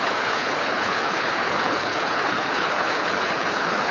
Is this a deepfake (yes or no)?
yes